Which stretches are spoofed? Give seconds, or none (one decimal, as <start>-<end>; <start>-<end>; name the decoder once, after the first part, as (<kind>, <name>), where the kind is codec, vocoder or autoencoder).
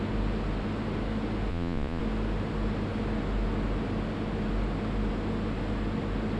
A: 1.5-2.0 (vocoder, Vocos)